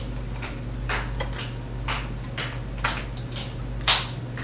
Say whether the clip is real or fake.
real